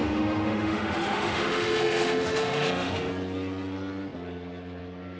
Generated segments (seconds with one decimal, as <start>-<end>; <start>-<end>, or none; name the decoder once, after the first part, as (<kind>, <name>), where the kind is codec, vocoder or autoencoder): 0.0-3.1 (autoencoder, DAC-VAE)